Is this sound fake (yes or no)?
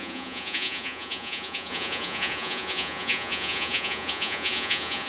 yes